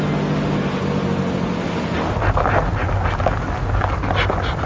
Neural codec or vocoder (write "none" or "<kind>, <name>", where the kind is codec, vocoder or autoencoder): none